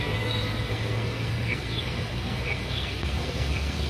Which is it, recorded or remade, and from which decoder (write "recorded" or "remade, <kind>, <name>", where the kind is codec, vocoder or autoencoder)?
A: remade, codec, SNAC